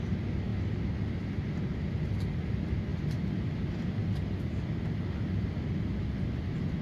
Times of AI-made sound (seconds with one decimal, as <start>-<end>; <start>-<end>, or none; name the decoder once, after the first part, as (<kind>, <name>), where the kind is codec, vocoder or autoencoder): 2.9-4.5 (vocoder, BigVGAN v2)